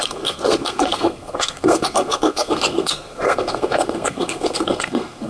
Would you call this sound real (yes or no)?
no